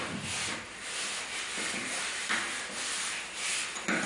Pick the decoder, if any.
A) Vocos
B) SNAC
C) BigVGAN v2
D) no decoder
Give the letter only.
D